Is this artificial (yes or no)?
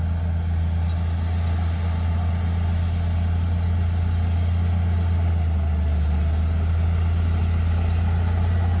no